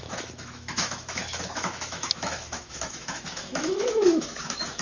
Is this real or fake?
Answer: fake